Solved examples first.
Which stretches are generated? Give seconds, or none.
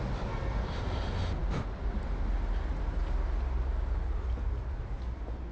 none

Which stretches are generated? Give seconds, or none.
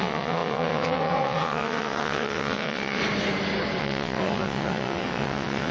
0.0-3.0; 3.8-5.7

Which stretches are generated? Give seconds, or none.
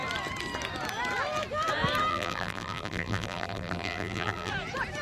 2.1-4.5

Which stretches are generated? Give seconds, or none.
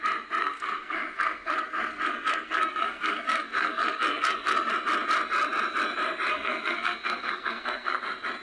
0.4-4.7; 6.3-8.0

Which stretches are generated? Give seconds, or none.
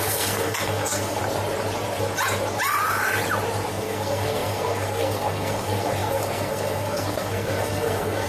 0.0-1.2; 3.7-8.3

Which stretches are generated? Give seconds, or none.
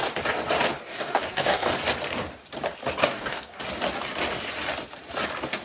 0.9-1.7; 3.0-3.6